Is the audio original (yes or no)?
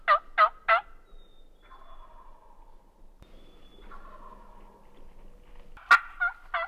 yes